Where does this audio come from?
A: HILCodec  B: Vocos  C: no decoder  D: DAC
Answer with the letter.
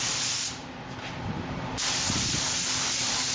C